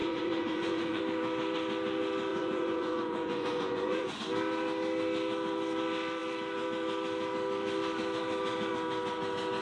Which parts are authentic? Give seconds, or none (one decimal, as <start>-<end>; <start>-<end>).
1.0-2.3; 4.2-9.6